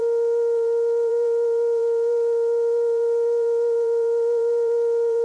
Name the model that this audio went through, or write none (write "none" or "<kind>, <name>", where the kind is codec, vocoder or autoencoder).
vocoder, BigVGAN v2